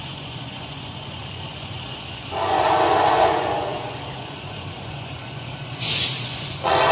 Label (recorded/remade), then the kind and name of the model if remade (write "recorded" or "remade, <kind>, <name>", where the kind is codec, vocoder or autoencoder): remade, vocoder, Vocos